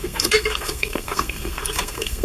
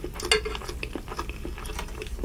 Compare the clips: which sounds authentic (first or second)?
second